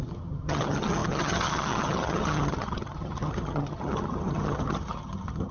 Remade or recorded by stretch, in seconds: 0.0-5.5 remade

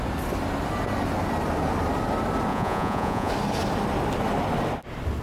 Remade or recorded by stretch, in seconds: 0.0-2.5 recorded; 2.5-3.3 remade; 3.3-5.2 recorded

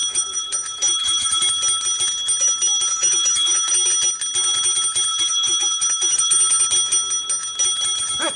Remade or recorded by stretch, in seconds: 0.0-1.4 remade; 1.4-2.9 recorded; 2.9-3.7 remade; 3.7-5.1 recorded; 5.1-6.4 remade; 6.4-8.4 recorded